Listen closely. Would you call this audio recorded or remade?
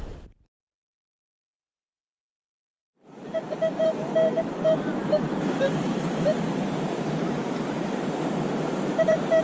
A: remade